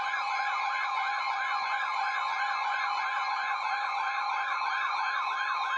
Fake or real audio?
fake